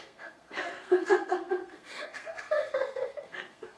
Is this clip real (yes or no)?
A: no